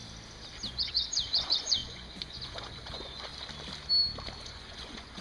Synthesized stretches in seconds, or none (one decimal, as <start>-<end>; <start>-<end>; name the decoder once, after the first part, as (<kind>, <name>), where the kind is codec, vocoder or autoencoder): 0.7-3.3 (vocoder, Vocos); 4.4-5.2